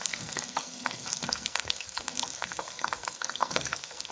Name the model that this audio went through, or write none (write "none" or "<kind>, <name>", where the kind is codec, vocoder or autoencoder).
codec, SNAC